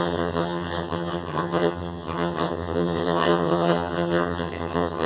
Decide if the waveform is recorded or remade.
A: remade